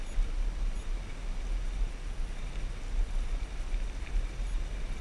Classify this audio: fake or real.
real